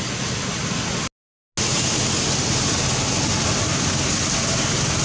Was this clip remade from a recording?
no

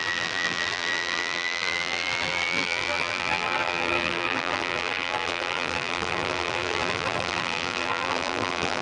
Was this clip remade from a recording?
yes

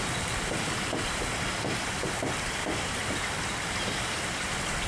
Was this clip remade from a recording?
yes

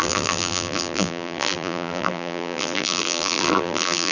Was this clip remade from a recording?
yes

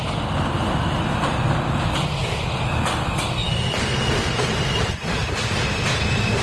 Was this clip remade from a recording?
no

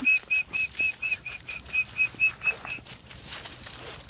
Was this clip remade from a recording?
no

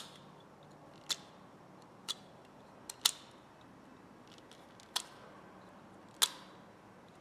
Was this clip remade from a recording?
no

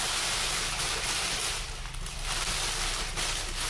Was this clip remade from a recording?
no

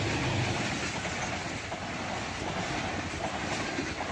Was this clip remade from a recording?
no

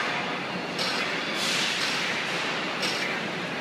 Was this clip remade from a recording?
no